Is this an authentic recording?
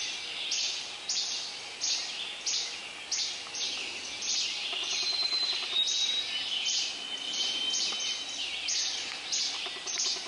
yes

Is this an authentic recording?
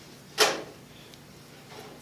yes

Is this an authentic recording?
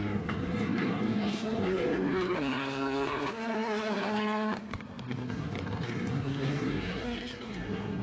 no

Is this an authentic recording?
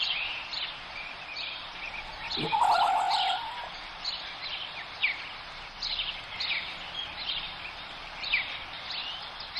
yes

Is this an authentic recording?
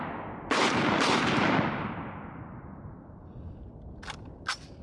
yes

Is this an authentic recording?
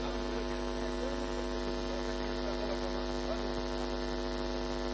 yes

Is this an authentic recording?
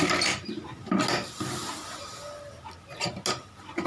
yes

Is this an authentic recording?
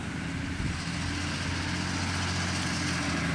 yes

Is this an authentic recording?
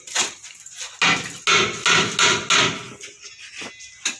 yes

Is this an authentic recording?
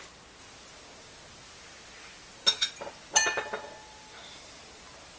yes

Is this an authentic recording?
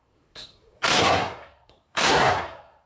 no